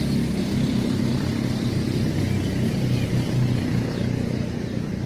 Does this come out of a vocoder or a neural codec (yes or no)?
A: yes